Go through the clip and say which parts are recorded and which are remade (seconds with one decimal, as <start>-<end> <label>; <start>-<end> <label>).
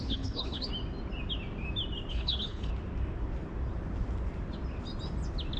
0.0-0.7 remade; 0.7-2.1 recorded; 2.1-2.7 remade; 2.7-5.6 recorded